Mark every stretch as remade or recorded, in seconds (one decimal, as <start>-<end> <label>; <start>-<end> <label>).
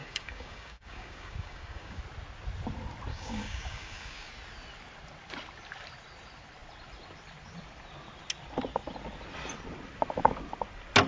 0.0-2.0 remade; 2.0-3.1 recorded; 3.1-4.3 remade; 4.3-11.1 recorded